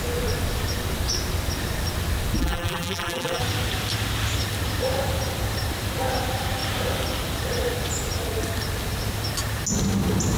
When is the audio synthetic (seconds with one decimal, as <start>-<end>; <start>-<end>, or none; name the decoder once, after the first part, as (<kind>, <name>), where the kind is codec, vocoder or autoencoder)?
2.4-3.4 (vocoder, BigVGAN v2)